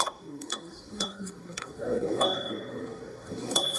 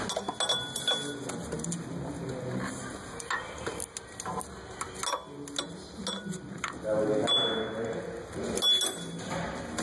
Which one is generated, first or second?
first